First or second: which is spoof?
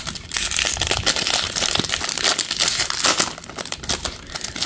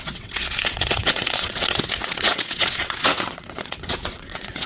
second